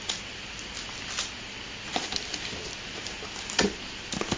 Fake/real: real